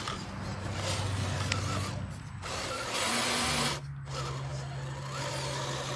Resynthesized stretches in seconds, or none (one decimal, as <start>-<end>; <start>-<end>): none